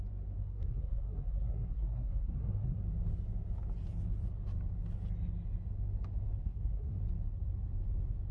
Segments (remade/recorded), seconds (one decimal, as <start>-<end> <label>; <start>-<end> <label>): 0.0-0.4 recorded; 0.4-2.8 remade; 2.8-6.4 recorded; 6.4-7.0 remade; 7.0-8.3 recorded

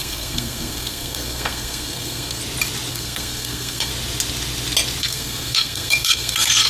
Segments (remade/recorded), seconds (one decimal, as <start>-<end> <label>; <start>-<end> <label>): 0.0-2.4 remade; 2.4-2.9 recorded; 2.9-3.9 remade; 3.9-5.0 recorded; 5.0-6.7 remade

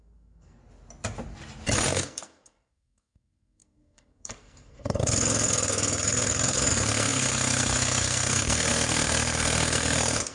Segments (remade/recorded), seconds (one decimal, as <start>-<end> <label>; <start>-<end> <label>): 0.0-0.6 remade; 0.6-1.9 recorded; 1.9-10.3 remade

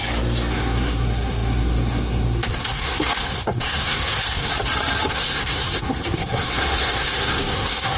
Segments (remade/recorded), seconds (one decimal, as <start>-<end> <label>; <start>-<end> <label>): 0.0-0.5 recorded; 0.5-4.5 remade; 4.5-5.1 recorded; 5.1-8.0 remade

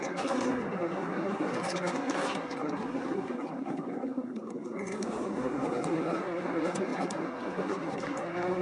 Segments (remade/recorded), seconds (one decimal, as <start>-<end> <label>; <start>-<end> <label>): 0.0-8.6 remade

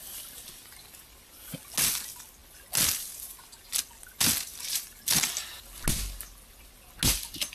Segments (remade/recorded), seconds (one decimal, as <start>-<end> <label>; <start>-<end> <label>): 0.0-7.5 recorded